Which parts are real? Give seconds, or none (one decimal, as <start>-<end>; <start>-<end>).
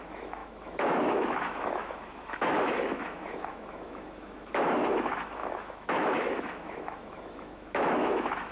none